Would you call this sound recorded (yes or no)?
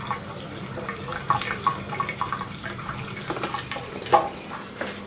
yes